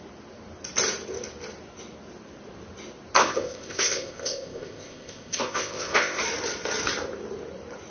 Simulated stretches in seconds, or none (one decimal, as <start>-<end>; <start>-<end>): 3.2-6.2

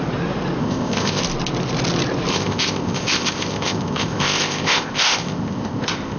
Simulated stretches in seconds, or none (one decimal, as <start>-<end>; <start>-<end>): 0.6-1.2; 2.3-6.2

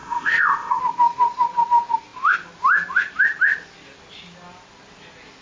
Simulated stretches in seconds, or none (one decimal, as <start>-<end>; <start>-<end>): 0.0-0.8

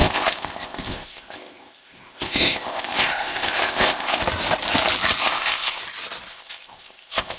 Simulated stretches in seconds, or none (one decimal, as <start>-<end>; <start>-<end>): 0.0-4.2; 5.2-5.8; 6.3-7.4

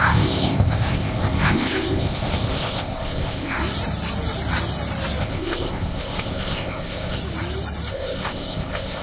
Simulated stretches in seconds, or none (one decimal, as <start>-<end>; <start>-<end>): 0.0-3.6; 5.2-7.2; 7.9-9.0

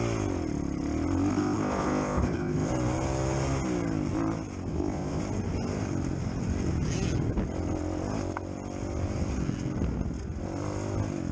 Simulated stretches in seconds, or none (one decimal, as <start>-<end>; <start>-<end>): 1.3-2.7; 4.7-5.2

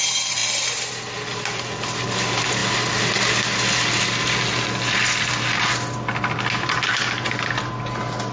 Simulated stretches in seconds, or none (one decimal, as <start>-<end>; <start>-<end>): none

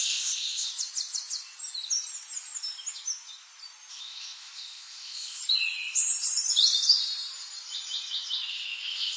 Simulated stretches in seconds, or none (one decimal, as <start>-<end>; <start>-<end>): 0.0-0.7; 3.9-5.4; 8.5-9.2